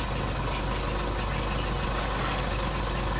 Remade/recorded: recorded